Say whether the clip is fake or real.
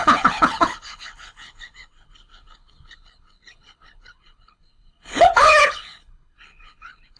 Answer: fake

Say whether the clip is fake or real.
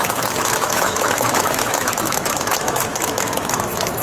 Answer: fake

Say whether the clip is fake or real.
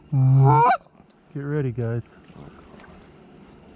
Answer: real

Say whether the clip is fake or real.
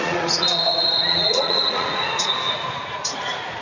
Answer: fake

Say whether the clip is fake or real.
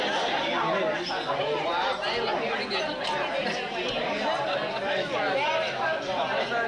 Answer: real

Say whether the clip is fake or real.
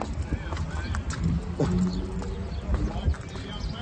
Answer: real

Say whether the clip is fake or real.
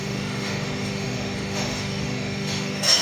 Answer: fake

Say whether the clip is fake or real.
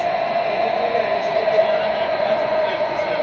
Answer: fake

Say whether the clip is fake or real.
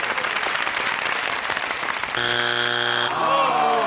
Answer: real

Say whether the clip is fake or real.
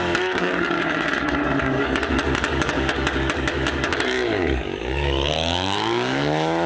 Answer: fake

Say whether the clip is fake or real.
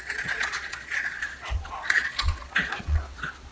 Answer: fake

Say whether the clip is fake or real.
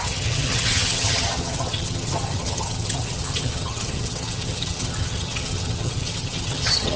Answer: fake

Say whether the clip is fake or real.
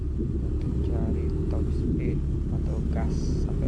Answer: real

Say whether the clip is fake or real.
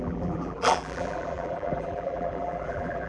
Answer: fake